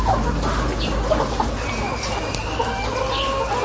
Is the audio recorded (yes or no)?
yes